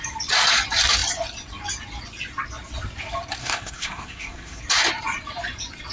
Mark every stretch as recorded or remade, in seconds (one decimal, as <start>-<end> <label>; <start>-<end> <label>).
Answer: 0.0-3.4 recorded; 3.4-4.6 remade; 4.6-5.9 recorded